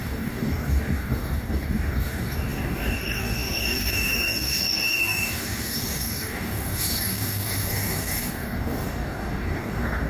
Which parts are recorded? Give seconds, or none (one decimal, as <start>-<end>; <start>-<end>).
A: none